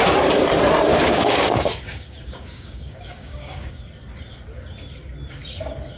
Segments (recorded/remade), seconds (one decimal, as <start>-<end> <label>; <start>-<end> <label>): 0.0-0.9 recorded; 0.9-3.8 remade; 3.8-6.0 recorded

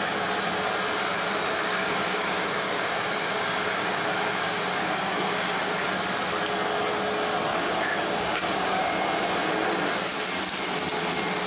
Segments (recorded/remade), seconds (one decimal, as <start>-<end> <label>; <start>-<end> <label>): 0.0-1.7 recorded; 1.7-6.0 remade; 6.0-7.5 recorded; 7.5-8.8 remade; 8.8-11.5 recorded

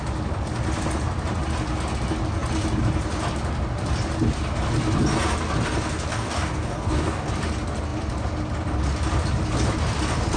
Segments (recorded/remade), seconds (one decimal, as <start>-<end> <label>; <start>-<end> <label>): 0.0-6.1 recorded; 6.1-7.3 remade; 7.3-10.4 recorded

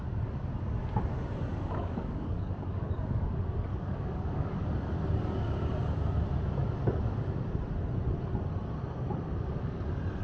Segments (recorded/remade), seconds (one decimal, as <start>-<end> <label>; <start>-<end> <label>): 0.0-1.5 recorded; 1.5-3.3 remade; 3.3-3.7 recorded; 3.7-4.7 remade; 4.7-10.2 recorded

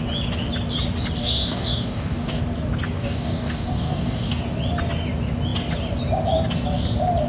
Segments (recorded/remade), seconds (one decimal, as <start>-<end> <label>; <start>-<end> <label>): 0.0-1.2 recorded; 1.2-2.4 remade; 2.4-3.0 recorded; 3.0-4.4 remade; 4.4-7.3 recorded